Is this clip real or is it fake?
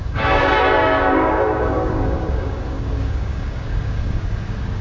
fake